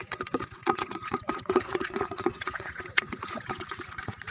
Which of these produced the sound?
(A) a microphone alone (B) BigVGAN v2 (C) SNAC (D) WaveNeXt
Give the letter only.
D